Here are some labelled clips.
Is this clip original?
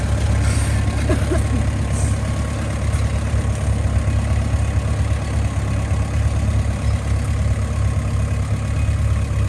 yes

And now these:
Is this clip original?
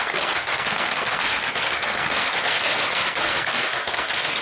no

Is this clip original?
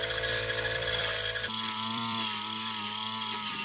no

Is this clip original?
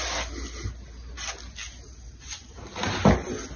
yes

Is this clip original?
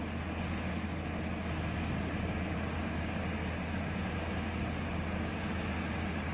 yes